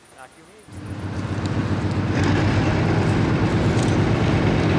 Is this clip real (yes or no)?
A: yes